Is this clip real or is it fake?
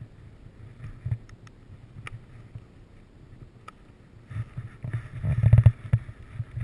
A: real